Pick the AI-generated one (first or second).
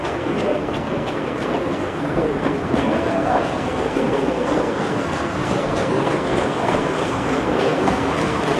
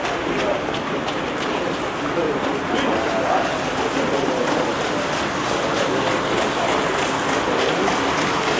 first